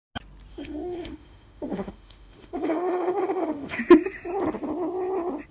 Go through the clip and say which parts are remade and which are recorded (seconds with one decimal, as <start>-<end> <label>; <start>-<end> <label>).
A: 0.0-0.5 recorded; 0.5-3.8 remade; 3.8-5.5 recorded